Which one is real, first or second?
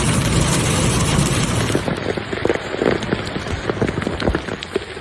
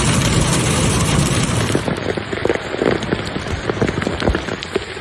first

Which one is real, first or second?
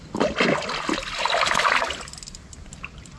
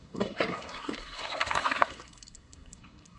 first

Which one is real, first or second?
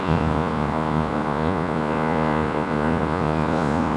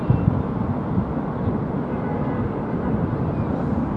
second